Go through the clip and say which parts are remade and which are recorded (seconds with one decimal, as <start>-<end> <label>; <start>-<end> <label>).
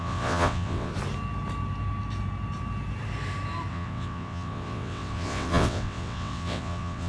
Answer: 0.0-0.9 remade; 0.9-3.7 recorded; 3.7-7.1 remade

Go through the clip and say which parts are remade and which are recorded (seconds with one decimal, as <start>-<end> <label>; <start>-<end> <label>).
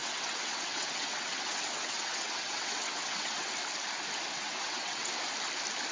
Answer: 0.0-3.5 remade; 3.5-4.3 recorded; 4.3-5.1 remade; 5.1-5.9 recorded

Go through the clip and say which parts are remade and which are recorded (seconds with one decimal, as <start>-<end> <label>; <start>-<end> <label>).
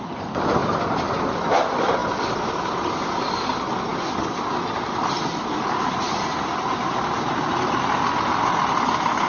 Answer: 0.0-9.3 recorded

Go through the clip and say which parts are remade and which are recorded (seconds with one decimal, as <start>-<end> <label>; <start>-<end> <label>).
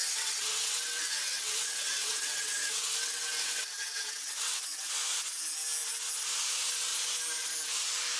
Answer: 0.0-4.9 remade; 4.9-8.2 recorded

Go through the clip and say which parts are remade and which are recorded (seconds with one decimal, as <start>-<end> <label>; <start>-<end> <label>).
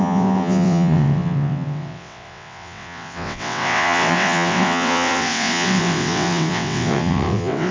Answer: 0.0-7.7 remade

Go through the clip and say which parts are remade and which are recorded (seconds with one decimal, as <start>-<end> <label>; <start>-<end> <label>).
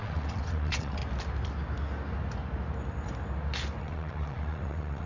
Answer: 0.0-1.0 remade; 1.0-3.8 recorded; 3.8-5.1 remade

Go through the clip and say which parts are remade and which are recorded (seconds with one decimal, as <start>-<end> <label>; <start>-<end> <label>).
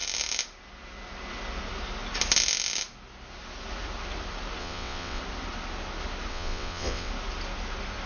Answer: 0.0-4.6 recorded; 4.6-5.2 remade; 5.2-6.3 recorded; 6.3-7.1 remade; 7.1-8.1 recorded